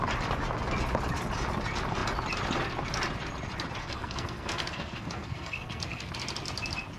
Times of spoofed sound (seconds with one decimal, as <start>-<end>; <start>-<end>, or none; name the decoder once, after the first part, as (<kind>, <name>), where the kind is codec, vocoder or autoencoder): 3.8-6.1 (codec, SNAC)